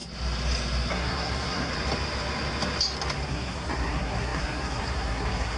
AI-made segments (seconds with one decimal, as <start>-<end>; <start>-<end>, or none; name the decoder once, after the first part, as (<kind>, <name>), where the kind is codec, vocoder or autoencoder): 0.9-1.7 (codec, SNAC); 3.3-5.6